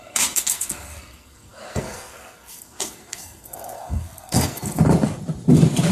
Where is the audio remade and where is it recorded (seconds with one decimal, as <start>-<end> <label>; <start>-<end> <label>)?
0.0-4.8 remade; 4.8-5.9 recorded